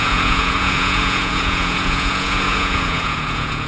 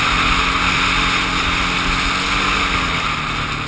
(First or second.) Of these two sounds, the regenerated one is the first